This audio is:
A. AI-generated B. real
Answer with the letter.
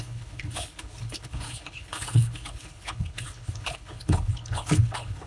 A